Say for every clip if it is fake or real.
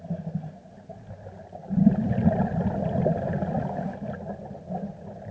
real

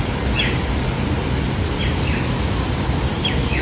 real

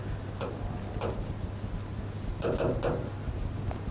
real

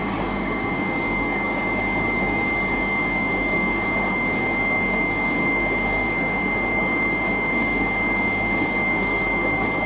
fake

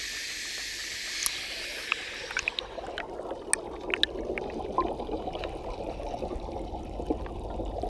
real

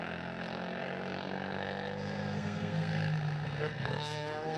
fake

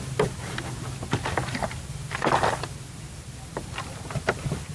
real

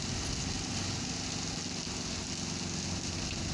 real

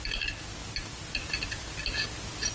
real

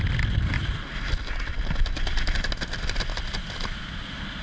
real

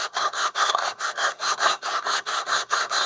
fake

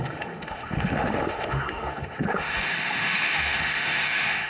fake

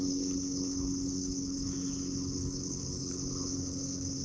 fake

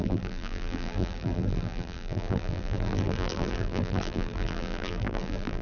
fake